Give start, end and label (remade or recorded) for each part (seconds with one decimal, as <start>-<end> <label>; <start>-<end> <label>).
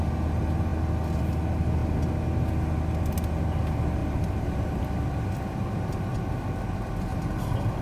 0.0-4.0 recorded; 4.0-4.8 remade; 4.8-7.1 recorded; 7.1-7.8 remade